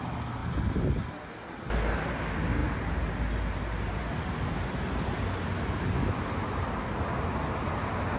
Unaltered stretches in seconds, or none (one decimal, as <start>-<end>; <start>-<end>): 0.0-8.2